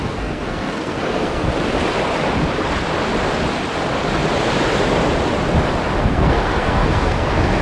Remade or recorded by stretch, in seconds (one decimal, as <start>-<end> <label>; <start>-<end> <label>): 0.0-1.5 remade; 1.5-6.0 recorded; 6.0-7.6 remade